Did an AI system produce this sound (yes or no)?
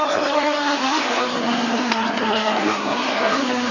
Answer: yes